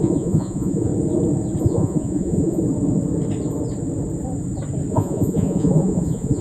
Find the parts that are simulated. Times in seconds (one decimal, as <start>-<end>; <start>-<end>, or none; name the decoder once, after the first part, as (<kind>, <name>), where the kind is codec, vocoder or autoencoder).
0.0-0.9 (vocoder, Vocos); 1.6-2.6; 4.9-6.4